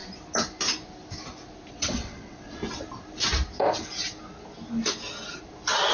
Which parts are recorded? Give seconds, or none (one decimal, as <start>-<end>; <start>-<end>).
0.0-1.7; 2.6-5.9